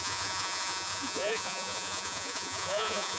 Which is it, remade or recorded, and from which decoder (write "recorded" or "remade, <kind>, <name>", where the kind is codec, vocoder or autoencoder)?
remade, vocoder, Vocos